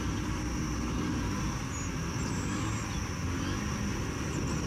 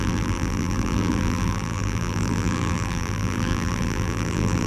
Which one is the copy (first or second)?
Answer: second